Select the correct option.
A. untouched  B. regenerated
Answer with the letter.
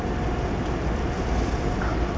A